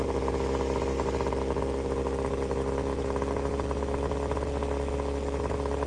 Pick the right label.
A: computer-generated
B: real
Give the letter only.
B